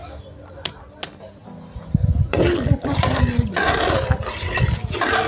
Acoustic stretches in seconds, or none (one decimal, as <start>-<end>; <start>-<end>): 0.7-1.4; 3.2-5.3